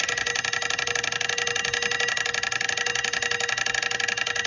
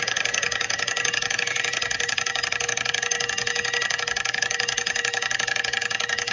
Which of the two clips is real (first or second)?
first